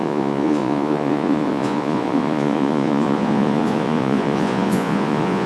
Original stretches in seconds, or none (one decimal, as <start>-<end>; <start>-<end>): none